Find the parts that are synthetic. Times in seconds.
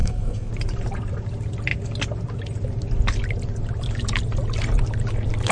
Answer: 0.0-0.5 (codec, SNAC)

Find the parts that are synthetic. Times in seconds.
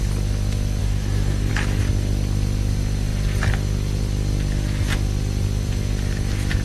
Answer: 0.8-1.5 (codec, DAC)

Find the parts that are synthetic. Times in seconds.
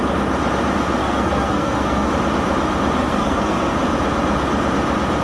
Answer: 1.0-2.1 (codec, SNAC); 3.0-3.7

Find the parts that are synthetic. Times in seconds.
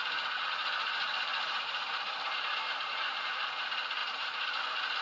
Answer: 0.6-3.6 (vocoder, BigVGAN v2); 4.0-4.6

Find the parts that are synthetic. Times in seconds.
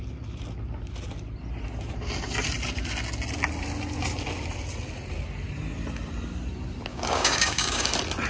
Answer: 6.9-7.9 (codec, DAC)